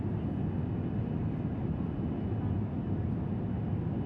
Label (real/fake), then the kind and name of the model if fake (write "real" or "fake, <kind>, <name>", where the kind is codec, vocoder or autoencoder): real